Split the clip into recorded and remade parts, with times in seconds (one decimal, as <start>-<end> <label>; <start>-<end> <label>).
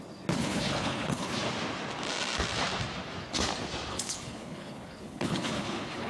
0.0-0.4 recorded; 0.4-1.4 remade; 1.4-3.9 recorded; 3.9-6.1 remade